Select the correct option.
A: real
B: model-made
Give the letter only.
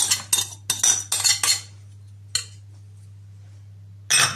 A